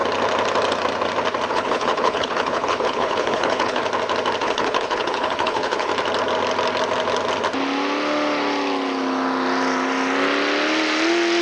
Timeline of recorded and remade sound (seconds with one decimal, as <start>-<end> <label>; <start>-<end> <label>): 0.0-1.5 recorded; 1.5-3.8 remade; 3.8-4.4 recorded; 4.4-5.9 remade; 5.9-11.4 recorded